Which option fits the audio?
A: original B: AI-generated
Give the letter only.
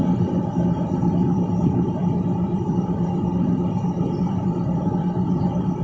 A